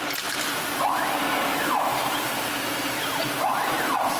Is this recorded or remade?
remade